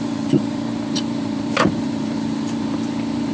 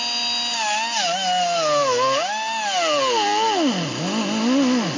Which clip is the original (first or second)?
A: second